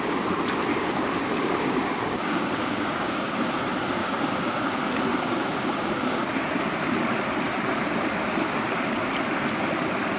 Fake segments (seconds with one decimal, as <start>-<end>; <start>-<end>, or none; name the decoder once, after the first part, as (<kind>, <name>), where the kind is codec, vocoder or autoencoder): 0.7-3.5 (codec, DAC); 4.0-4.6; 5.1-6.2